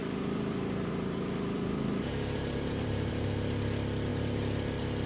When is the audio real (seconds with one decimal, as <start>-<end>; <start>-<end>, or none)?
3.1-5.1